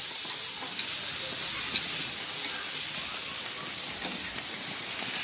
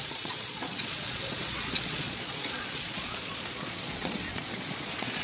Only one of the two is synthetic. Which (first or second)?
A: second